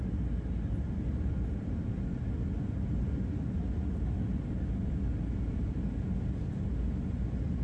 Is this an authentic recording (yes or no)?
yes